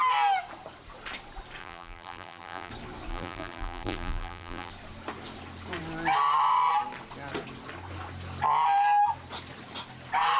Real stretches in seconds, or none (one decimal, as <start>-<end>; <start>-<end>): 0.0-1.6; 2.7-3.1; 4.7-10.4